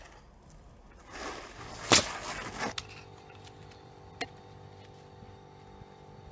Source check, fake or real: real